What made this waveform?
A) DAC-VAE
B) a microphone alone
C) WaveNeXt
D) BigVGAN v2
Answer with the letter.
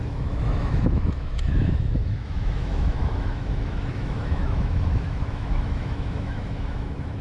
A